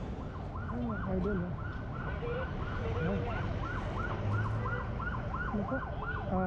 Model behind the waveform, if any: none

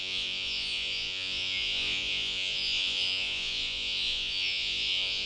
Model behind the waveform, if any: vocoder, Vocos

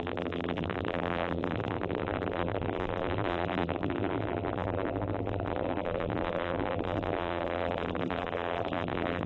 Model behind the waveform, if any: vocoder, BigVGAN v2